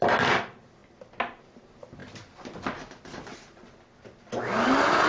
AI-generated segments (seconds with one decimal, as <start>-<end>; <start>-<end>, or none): none